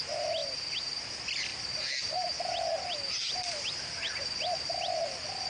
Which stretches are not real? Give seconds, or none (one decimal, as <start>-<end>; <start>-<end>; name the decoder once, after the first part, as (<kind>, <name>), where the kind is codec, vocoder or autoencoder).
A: none